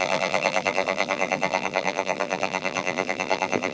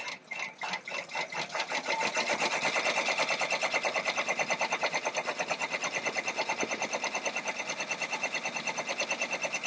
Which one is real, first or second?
second